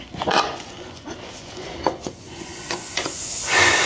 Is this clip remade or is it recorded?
remade